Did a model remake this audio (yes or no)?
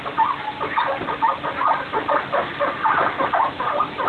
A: no